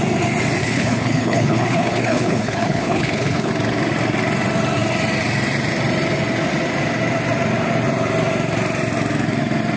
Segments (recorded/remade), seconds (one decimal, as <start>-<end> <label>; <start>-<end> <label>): 0.0-0.6 recorded; 0.6-3.5 remade; 3.5-9.8 recorded